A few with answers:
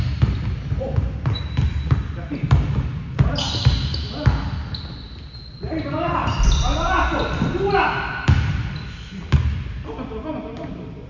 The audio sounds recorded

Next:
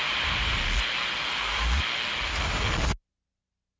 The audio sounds recorded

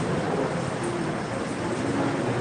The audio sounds recorded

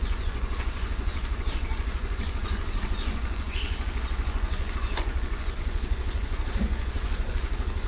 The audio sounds remade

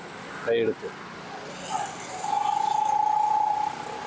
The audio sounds recorded